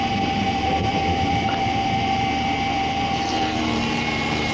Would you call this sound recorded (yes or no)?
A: no